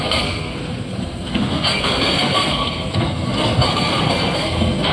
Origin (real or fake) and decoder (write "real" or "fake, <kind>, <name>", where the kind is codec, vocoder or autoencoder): fake, codec, SNAC